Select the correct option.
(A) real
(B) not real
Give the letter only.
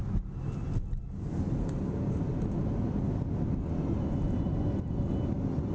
A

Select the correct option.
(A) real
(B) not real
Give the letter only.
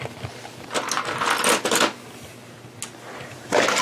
A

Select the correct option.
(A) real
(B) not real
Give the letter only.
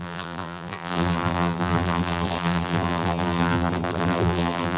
B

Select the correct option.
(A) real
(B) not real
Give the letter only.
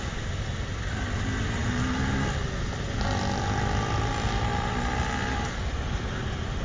A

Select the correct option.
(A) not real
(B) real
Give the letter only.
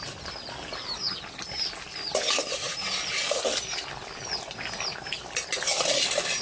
B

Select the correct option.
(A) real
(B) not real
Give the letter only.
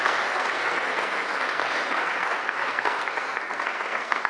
B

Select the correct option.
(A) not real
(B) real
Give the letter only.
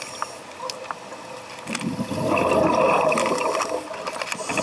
B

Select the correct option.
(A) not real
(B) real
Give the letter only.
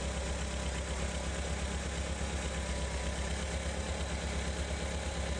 B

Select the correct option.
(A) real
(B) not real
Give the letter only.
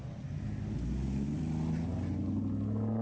A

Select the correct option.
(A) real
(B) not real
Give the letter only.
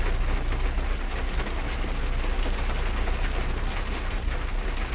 A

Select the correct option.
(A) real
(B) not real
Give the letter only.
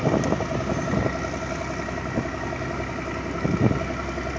A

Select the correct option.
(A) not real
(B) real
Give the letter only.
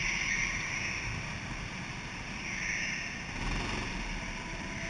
B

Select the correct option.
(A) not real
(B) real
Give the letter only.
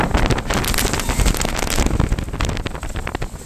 B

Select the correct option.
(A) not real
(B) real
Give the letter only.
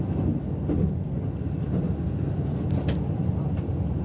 B